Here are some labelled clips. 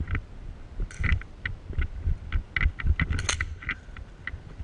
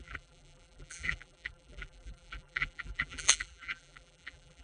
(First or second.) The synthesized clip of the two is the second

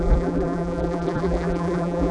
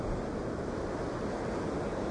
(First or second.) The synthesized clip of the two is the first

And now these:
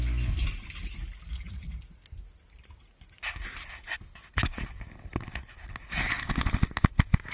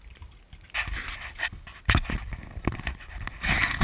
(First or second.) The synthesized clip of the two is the second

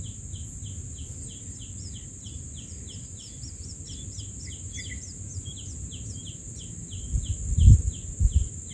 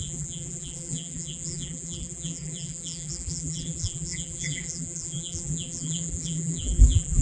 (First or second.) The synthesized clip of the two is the second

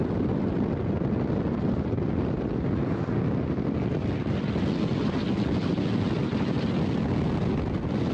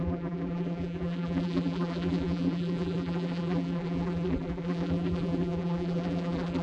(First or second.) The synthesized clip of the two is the second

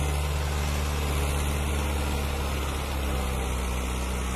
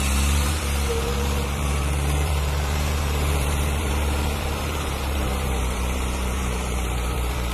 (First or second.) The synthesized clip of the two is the second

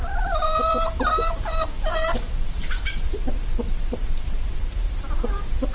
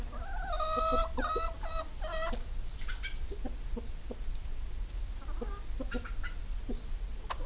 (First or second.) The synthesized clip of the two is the first